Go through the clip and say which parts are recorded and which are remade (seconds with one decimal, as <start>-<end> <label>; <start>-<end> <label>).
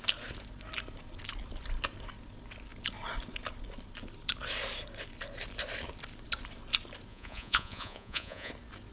0.0-7.1 recorded; 7.1-8.5 remade; 8.5-8.9 recorded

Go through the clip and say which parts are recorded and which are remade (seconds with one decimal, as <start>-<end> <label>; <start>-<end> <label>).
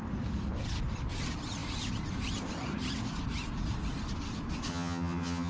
0.0-4.7 recorded; 4.7-5.5 remade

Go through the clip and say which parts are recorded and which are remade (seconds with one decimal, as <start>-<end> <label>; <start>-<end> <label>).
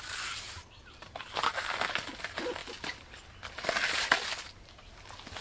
0.0-5.4 recorded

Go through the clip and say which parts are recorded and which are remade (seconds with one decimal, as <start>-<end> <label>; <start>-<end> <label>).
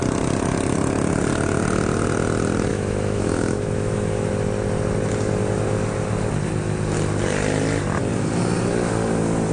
0.0-2.7 recorded; 2.7-4.3 remade; 4.3-9.5 recorded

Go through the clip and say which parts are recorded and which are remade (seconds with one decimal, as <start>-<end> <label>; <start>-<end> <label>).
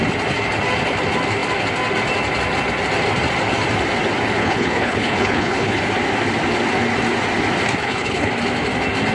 0.0-4.4 recorded; 4.4-5.8 remade; 5.8-7.8 recorded; 7.8-8.3 remade; 8.3-9.1 recorded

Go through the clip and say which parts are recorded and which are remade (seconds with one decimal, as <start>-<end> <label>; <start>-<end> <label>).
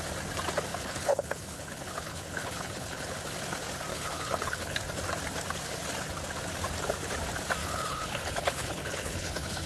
0.0-0.7 recorded; 0.7-3.2 remade; 3.2-3.9 recorded; 3.9-4.8 remade; 4.8-7.6 recorded; 7.6-9.7 remade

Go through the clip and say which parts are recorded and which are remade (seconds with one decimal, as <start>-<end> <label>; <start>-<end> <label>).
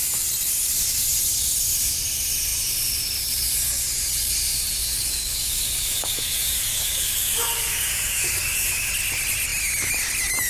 0.0-4.8 recorded; 4.8-8.9 remade; 8.9-10.5 recorded